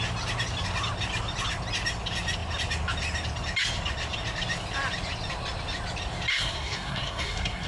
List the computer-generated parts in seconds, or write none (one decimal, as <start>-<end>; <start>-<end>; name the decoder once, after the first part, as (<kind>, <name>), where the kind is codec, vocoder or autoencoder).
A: 6.3-7.7 (codec, SNAC)